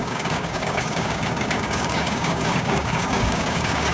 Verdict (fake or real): fake